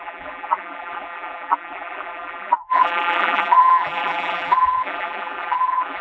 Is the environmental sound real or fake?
fake